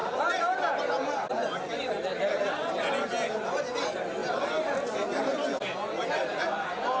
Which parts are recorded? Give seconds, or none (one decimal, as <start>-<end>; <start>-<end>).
0.0-7.0